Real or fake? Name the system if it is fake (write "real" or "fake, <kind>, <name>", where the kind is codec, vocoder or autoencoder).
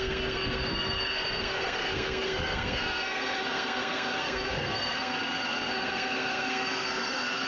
fake, codec, SNAC